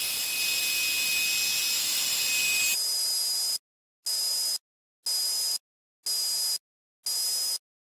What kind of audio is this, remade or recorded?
recorded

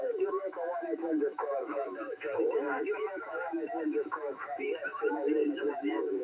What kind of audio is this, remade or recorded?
remade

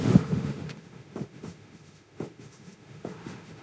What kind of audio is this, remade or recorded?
remade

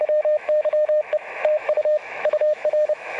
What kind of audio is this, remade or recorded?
remade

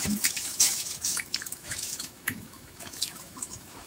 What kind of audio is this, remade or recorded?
remade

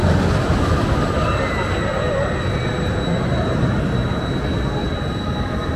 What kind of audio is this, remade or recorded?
recorded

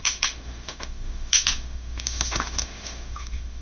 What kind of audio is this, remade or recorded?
remade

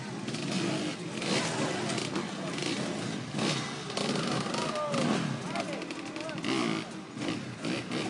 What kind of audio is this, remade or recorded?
recorded